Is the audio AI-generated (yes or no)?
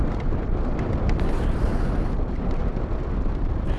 no